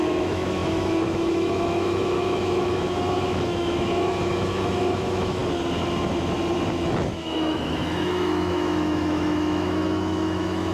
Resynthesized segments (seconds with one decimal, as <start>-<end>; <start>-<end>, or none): 0.0-5.4; 7.1-10.7